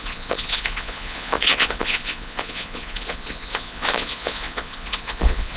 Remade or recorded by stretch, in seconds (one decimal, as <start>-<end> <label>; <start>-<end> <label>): 0.0-5.6 remade